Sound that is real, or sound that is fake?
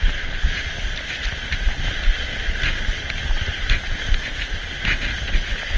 real